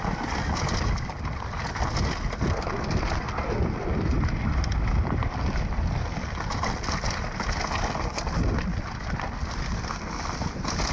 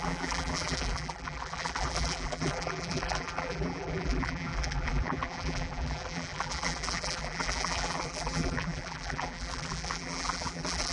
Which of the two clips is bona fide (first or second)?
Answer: first